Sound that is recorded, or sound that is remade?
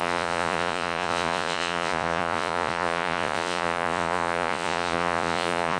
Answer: remade